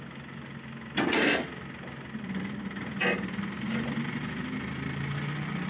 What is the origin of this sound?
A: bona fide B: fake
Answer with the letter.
A